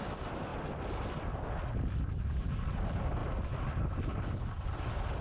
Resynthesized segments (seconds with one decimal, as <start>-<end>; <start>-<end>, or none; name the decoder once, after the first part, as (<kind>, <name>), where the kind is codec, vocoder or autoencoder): none